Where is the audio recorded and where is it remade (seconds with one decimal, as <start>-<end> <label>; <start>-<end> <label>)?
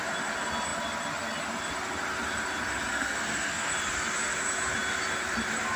0.0-2.9 recorded; 2.9-3.7 remade; 3.7-5.8 recorded